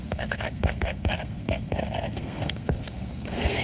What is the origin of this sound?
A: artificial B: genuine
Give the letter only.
A